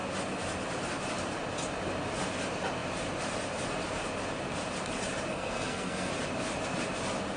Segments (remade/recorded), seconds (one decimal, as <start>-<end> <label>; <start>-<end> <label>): 0.0-5.3 recorded; 5.3-6.1 remade; 6.1-7.4 recorded